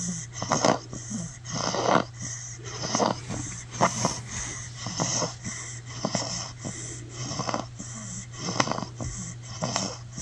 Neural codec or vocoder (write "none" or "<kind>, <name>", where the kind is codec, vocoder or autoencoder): none